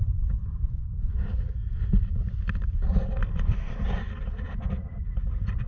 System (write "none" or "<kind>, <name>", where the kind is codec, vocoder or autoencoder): none